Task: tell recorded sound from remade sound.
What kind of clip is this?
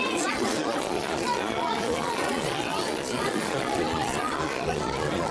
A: remade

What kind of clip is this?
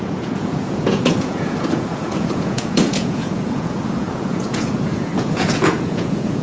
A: remade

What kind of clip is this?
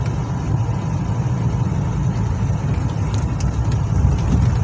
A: recorded